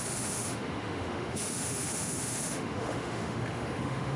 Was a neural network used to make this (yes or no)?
yes